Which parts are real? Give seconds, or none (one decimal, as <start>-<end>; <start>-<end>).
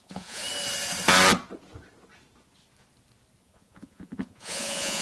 0.4-3.4